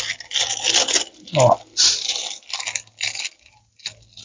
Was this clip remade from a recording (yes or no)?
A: no